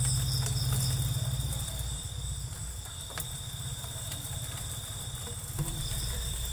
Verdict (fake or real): fake